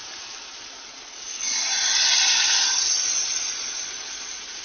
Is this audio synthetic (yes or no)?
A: no